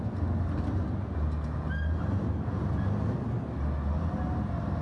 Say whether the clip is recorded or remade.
recorded